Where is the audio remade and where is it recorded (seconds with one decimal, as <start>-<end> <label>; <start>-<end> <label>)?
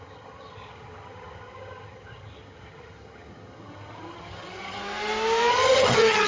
0.0-4.8 remade; 4.8-5.5 recorded; 5.5-6.3 remade